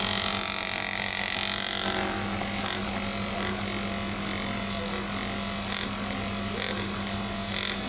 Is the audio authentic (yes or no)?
yes